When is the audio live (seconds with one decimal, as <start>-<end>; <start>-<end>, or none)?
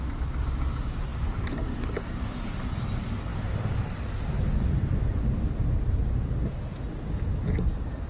0.0-8.1